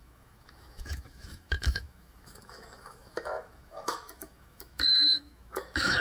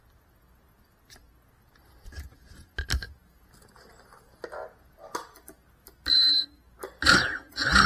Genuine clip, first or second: second